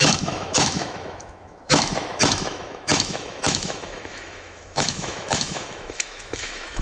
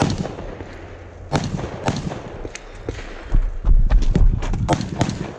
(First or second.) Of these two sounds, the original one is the second